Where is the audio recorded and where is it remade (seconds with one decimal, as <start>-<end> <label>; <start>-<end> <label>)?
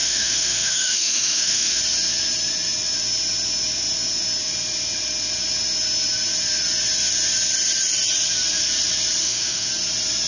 0.0-1.8 remade; 1.8-9.2 recorded; 9.2-9.7 remade; 9.7-10.3 recorded